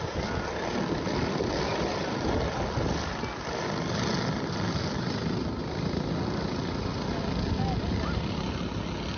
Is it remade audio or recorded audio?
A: recorded